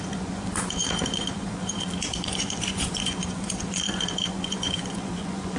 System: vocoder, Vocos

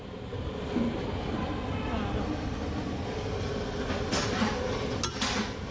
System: none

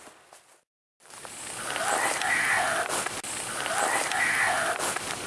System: none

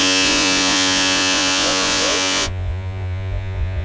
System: vocoder, Vocos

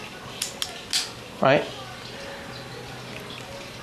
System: none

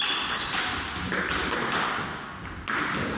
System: none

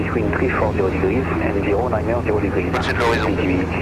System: none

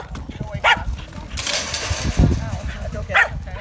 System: none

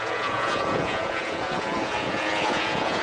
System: vocoder, Vocos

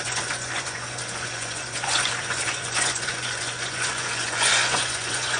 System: vocoder, Vocos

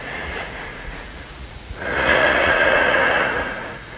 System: vocoder, Vocos